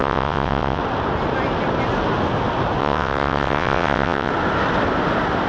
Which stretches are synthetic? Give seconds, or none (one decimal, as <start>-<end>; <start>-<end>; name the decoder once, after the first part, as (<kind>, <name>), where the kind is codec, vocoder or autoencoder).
0.0-0.8 (vocoder, WaveNeXt); 2.8-4.3